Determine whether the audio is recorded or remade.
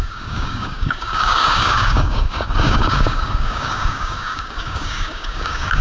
remade